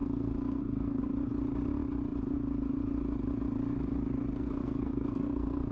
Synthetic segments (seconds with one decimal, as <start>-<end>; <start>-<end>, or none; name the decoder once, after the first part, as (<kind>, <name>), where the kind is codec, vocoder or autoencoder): 0.0-1.0 (codec, SNAC); 4.3-5.7